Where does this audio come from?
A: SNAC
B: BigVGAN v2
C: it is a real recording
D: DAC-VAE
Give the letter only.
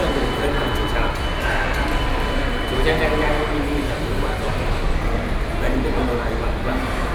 C